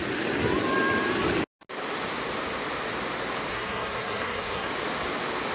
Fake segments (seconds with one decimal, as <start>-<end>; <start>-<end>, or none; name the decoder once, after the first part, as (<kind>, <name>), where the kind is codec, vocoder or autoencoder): 3.5-4.7 (codec, SNAC)